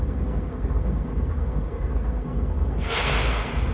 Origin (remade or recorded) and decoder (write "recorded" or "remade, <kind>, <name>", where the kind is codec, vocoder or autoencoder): remade, codec, SNAC